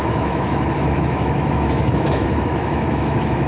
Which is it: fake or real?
fake